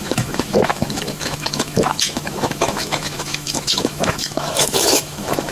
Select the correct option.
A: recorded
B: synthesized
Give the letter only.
B